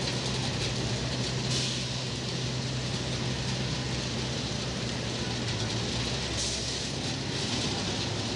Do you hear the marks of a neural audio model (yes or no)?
no